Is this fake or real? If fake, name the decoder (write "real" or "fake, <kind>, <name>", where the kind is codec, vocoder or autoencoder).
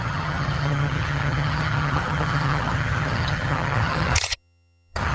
fake, vocoder, HiFi-GAN